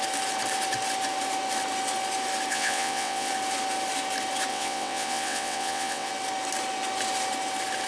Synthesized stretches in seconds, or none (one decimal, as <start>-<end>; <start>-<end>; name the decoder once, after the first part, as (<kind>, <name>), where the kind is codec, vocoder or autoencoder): 2.5-3.3 (vocoder, WaveNeXt); 4.5-6.1